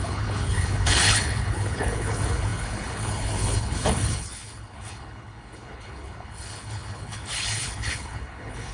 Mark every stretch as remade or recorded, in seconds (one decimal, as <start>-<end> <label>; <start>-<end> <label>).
0.0-8.7 remade